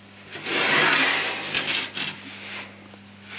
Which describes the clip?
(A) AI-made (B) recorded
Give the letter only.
B